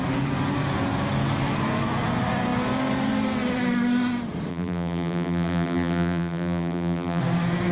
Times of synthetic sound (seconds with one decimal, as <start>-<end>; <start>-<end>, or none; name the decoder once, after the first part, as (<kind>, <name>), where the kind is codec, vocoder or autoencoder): 4.5-7.2 (vocoder, BigVGAN v2)